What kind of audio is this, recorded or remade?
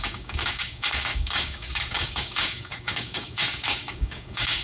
remade